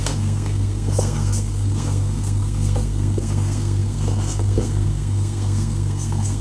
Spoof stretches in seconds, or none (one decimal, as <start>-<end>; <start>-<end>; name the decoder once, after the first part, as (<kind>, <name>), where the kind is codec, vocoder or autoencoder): 0.0-6.4 (codec, SNAC)

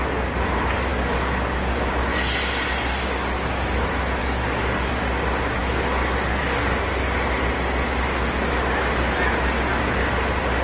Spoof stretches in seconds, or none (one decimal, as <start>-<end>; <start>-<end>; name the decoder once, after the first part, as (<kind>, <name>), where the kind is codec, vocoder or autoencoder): 0.9-1.9 (codec, DAC); 4.2-4.9

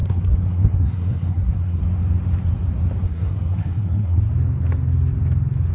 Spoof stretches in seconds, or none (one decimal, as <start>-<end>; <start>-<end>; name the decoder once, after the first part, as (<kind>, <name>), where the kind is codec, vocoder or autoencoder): 0.0-1.8 (codec, SNAC); 3.0-4.2

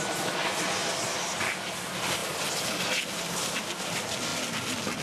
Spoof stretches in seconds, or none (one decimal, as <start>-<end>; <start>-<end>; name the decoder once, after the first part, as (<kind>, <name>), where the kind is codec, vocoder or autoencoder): 0.0-0.8 (vocoder, BigVGAN v2); 1.5-2.2; 3.1-5.0

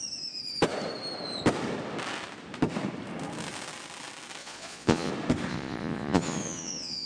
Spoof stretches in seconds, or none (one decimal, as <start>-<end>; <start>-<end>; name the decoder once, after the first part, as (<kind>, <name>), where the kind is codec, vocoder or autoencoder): 4.4-5.1 (vocoder, Vocos); 5.5-7.1